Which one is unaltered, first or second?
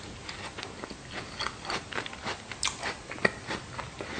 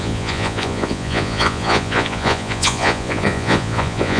first